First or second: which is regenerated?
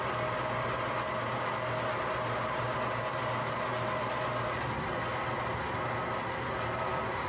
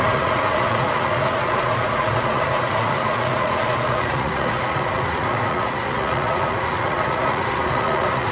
second